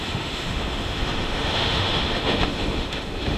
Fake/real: fake